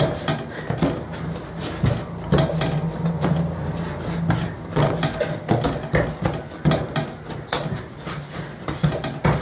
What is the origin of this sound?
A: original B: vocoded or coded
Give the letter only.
A